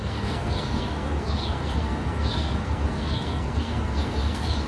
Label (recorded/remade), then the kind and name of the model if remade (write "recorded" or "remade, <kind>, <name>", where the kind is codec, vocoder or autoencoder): remade, codec, SNAC